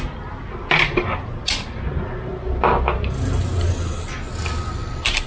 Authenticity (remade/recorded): recorded